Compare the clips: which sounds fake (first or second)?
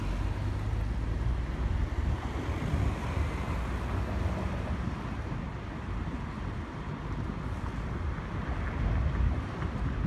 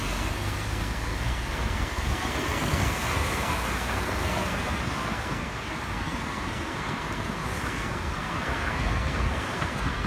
second